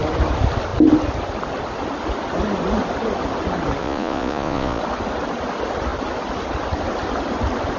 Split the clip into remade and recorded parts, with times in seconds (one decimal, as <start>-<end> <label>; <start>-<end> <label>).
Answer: 0.0-3.8 recorded; 3.8-4.8 remade; 4.8-7.8 recorded